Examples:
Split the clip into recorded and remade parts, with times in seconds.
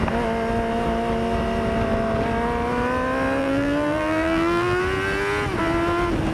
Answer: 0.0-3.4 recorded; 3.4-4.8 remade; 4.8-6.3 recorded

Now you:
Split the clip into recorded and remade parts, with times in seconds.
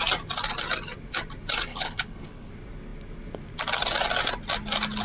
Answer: 0.0-1.7 recorded; 1.7-2.5 remade; 2.5-5.0 recorded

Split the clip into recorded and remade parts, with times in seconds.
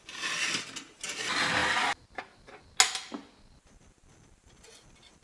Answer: 0.0-5.2 recorded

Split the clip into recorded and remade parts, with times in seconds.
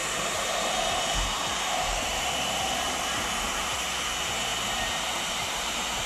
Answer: 0.0-3.7 remade; 3.7-6.1 recorded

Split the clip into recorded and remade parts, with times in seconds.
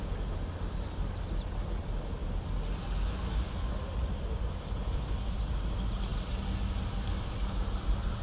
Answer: 0.0-8.2 recorded